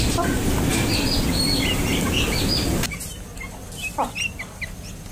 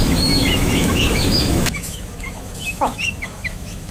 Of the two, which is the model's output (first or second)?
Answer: second